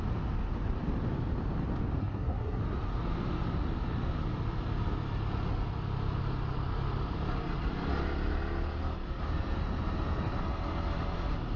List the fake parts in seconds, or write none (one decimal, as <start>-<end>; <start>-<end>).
2.0-2.6

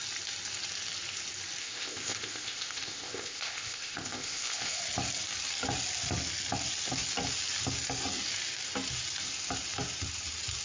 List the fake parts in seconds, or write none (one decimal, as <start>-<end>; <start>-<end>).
1.6-4.8

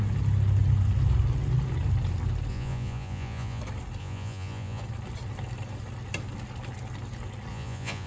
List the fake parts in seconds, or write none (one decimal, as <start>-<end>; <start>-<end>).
2.5-3.6; 4.0-4.8; 7.5-8.1

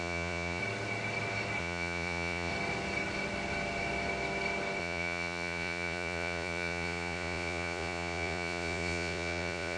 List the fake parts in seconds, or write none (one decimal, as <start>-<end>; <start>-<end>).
0.0-0.6; 1.6-2.5; 4.8-9.8

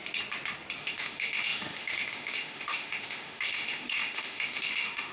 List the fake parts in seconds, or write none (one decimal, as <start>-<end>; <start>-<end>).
0.8-5.1

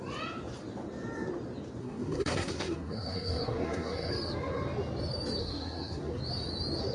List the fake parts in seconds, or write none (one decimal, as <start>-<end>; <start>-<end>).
1.8-4.1; 5.4-6.2